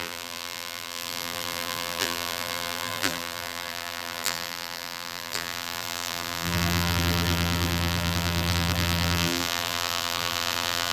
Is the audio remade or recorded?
remade